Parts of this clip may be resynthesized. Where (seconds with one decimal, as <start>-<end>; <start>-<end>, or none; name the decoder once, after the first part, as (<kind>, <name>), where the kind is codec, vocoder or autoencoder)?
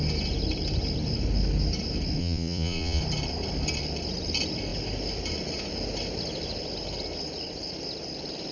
2.2-3.0 (vocoder, Vocos)